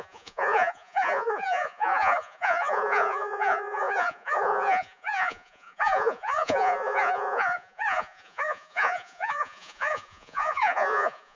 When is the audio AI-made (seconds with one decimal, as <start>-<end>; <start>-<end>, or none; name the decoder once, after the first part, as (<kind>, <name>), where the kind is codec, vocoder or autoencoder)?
0.0-11.4 (vocoder, Vocos)